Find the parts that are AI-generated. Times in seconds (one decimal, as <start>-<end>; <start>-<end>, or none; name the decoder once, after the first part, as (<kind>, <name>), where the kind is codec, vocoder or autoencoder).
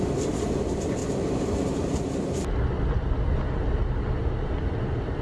none